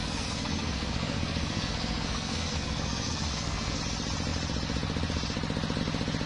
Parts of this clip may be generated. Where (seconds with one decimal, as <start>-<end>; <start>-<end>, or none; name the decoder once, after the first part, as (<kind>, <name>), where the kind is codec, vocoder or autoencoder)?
0.0-3.8 (codec, SNAC)